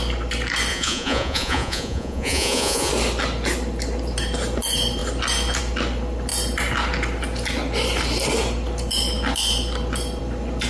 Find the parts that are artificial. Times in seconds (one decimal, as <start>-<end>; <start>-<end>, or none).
0.7-2.9